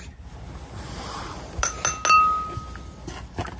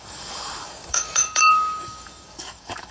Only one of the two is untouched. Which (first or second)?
first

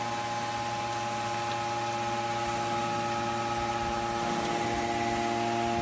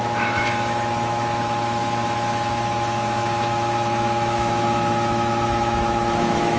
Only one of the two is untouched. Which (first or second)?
first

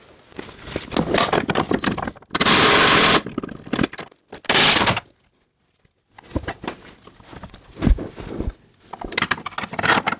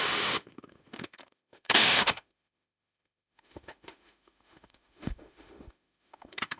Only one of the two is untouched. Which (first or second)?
first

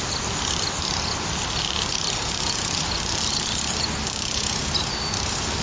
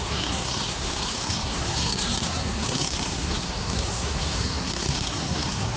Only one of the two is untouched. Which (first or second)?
first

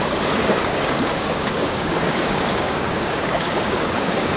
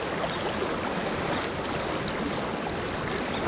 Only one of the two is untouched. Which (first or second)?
second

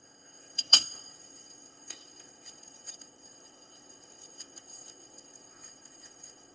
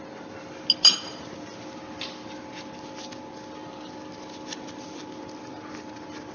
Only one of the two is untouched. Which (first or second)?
second